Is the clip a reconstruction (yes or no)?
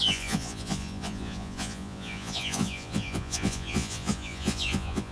yes